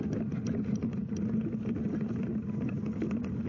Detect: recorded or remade recorded